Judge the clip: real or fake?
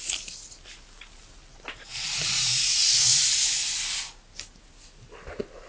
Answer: real